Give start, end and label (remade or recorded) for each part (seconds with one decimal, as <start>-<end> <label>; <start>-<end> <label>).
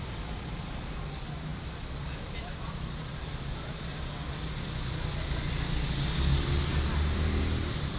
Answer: 0.0-8.0 recorded